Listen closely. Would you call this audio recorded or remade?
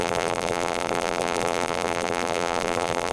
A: remade